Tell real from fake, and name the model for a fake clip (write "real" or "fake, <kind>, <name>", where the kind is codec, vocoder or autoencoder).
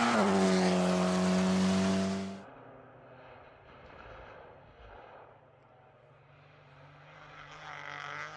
real